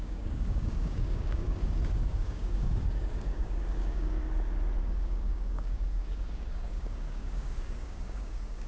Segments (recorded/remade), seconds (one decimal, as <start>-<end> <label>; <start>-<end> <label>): 0.0-4.2 remade; 4.2-4.8 recorded; 4.8-8.7 remade